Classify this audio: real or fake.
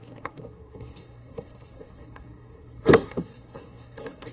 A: fake